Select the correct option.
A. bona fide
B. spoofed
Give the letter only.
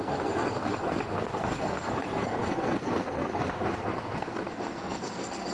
B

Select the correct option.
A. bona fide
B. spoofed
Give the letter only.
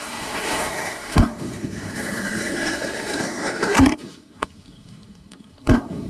B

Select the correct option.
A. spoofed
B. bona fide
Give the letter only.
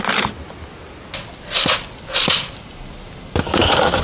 B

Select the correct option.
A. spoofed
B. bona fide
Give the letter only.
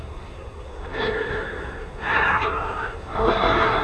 A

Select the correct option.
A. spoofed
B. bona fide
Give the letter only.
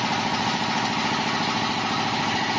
B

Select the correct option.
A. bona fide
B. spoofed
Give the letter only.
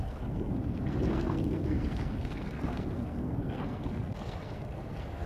B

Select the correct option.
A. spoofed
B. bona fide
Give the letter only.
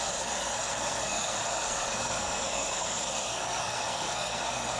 A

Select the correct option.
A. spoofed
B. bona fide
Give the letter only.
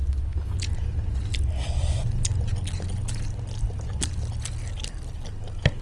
B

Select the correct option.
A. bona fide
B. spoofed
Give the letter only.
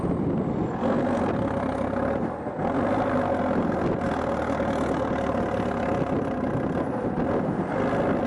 A